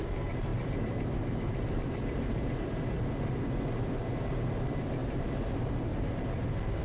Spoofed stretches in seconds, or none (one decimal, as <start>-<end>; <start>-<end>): 0.0-6.8